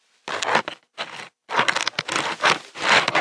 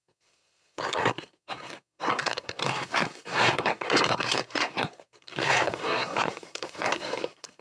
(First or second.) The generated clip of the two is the second